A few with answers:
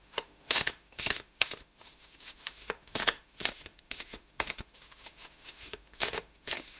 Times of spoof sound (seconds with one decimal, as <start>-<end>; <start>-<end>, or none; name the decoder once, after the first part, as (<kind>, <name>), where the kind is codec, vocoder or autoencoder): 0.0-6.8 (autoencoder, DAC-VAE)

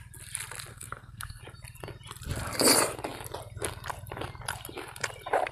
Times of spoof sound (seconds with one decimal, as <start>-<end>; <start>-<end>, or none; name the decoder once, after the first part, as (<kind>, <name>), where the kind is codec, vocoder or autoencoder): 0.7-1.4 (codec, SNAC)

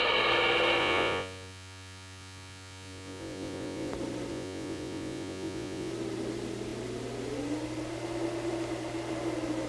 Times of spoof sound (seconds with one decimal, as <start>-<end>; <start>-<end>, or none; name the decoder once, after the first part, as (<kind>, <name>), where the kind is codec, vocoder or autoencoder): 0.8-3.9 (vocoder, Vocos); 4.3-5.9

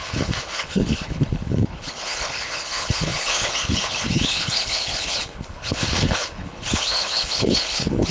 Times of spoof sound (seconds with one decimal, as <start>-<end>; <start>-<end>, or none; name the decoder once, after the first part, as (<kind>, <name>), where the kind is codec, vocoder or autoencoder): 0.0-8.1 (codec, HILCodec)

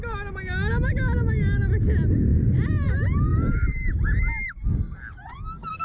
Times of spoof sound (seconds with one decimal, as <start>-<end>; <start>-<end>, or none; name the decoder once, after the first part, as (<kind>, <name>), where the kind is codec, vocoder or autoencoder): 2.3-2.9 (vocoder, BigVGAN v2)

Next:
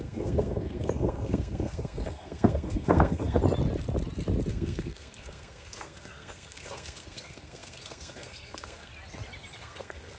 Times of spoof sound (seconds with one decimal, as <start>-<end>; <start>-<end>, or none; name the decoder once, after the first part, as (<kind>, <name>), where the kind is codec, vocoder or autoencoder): 0.0-3.4 (codec, SNAC); 4.5-8.9; 9.6-10.2